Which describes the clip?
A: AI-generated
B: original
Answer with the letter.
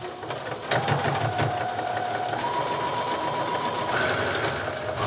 B